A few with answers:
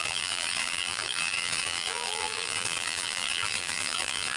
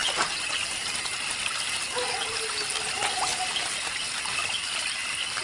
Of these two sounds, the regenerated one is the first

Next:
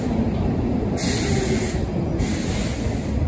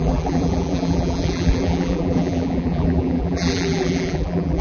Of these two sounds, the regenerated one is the second